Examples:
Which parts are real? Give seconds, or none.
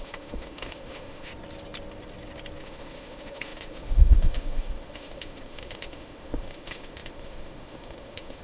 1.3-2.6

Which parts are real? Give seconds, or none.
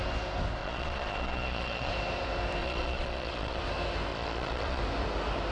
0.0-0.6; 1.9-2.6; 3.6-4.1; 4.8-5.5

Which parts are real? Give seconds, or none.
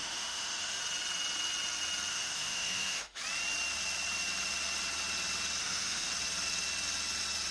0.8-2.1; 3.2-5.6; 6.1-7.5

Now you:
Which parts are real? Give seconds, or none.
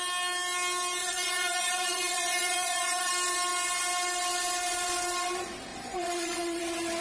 0.0-1.0; 3.1-5.7; 6.6-7.0